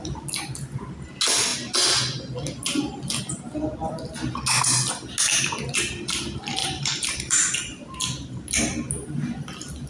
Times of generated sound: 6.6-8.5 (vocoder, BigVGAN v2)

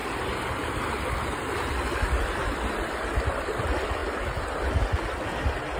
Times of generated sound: none